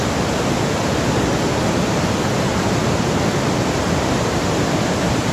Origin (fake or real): real